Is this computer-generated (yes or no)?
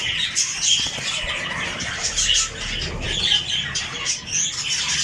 no